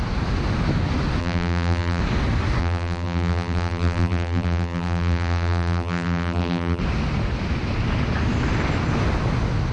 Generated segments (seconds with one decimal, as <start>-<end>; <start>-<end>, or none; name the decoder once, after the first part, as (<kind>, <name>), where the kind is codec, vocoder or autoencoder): 1.2-2.0 (vocoder, BigVGAN v2); 2.6-6.8